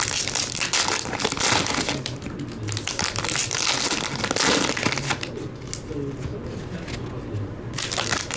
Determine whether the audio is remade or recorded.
recorded